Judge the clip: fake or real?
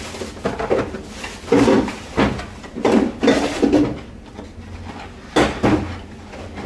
real